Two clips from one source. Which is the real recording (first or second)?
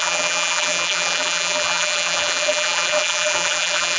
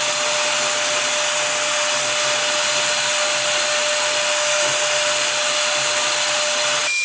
second